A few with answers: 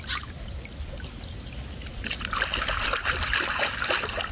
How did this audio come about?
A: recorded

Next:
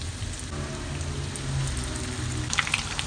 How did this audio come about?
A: recorded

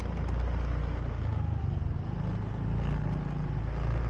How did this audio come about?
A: recorded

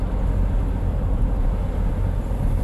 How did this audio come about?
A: recorded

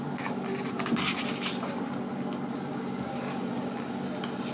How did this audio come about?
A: recorded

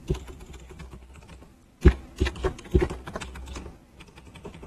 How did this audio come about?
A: recorded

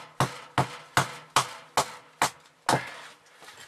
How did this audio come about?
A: recorded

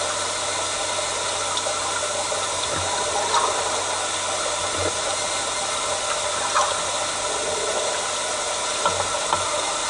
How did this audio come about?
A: recorded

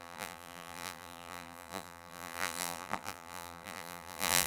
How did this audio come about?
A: remade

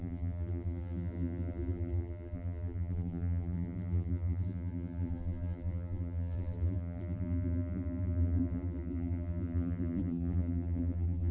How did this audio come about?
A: remade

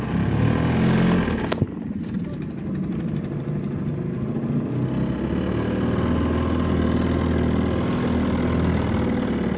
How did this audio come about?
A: recorded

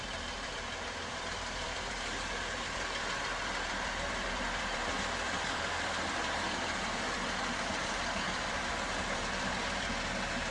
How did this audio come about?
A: remade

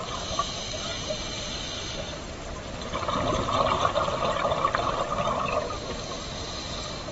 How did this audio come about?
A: recorded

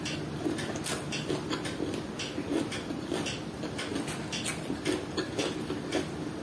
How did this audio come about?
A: recorded